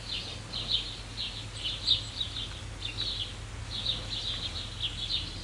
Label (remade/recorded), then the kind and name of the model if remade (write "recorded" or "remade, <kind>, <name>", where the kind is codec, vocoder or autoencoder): recorded